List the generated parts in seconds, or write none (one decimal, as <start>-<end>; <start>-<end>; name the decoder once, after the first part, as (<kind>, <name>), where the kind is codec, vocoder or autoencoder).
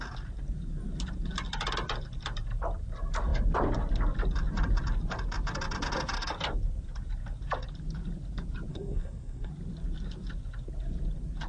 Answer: 8.7-9.5 (codec, SNAC)